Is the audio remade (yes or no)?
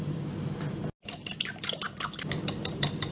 no